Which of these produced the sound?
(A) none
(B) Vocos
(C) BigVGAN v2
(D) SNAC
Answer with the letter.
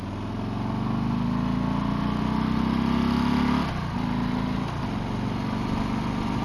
A